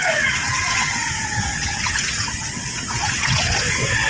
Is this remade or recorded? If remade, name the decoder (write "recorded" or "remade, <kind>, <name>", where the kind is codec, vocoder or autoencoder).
remade, vocoder, WaveNeXt